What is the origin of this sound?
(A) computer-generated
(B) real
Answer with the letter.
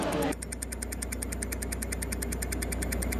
B